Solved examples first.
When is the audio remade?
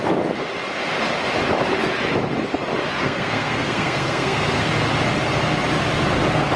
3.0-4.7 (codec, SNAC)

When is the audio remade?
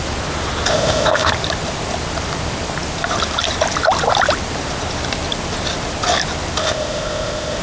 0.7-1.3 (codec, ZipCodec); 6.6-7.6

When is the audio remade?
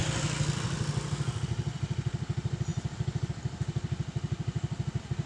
none